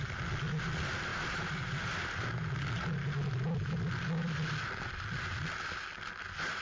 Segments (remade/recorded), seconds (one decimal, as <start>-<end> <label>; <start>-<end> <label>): 0.0-6.6 recorded